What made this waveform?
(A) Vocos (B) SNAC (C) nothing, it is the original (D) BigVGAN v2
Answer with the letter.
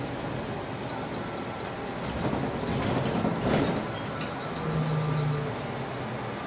C